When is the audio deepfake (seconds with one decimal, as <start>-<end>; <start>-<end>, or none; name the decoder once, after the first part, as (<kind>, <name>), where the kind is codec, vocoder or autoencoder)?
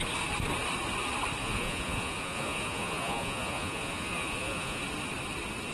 1.4-4.8 (vocoder, Vocos)